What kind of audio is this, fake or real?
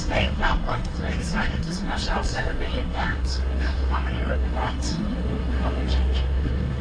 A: fake